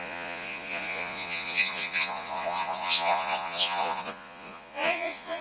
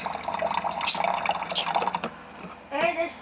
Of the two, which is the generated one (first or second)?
first